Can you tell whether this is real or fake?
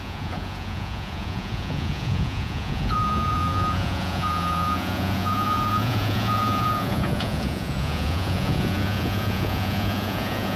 fake